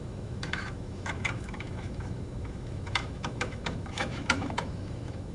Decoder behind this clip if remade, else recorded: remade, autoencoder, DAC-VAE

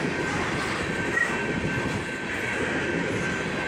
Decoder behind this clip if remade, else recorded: remade, vocoder, BigVGAN v2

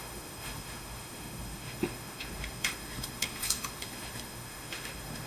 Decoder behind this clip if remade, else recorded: remade, autoencoder, DAC-VAE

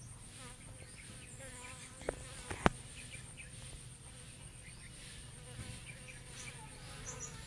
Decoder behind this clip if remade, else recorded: recorded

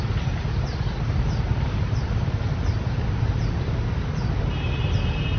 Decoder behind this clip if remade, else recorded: recorded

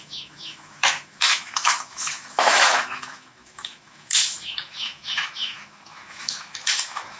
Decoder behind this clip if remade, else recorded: remade, autoencoder, DAC-VAE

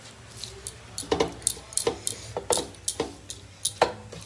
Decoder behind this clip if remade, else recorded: recorded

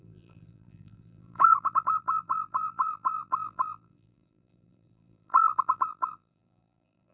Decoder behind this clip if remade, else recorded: remade, vocoder, BigVGAN v2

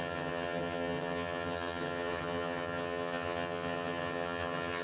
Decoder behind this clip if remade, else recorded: remade, vocoder, HiFi-GAN